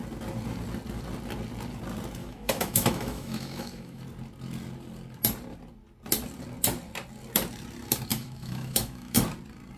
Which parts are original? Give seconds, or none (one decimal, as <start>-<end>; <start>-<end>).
0.0-2.2; 4.0-8.1; 9.2-9.8

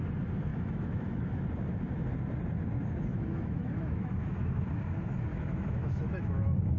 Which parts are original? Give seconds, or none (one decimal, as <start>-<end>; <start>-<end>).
0.0-0.5; 1.4-3.1; 4.6-5.3; 6.2-6.8

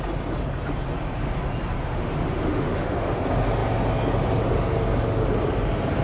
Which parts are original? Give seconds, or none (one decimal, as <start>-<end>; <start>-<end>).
0.0-1.8; 3.2-6.0

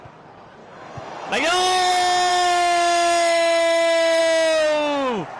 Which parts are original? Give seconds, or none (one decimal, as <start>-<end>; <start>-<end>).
0.0-0.6; 1.9-2.3; 4.2-5.4